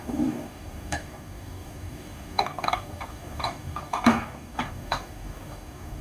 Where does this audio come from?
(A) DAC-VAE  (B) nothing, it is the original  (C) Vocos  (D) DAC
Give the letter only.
D